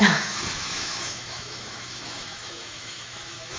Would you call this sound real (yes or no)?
no